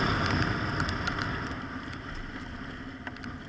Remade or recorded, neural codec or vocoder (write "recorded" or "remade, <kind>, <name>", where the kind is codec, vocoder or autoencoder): recorded